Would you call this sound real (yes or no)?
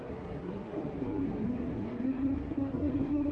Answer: no